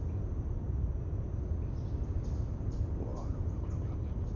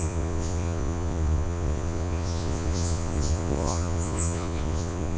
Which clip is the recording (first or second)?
first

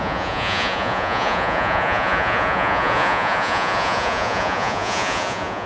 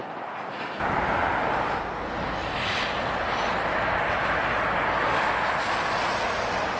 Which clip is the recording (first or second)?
second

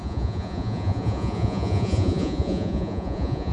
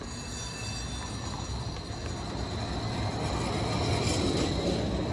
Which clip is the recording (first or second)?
second